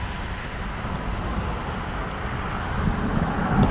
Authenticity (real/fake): real